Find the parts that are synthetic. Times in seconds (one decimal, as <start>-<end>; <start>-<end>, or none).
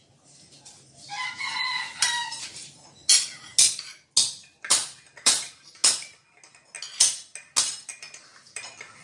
0.0-2.2; 4.6-5.8; 7.6-9.0